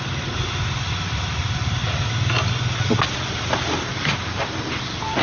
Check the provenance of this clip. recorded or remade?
recorded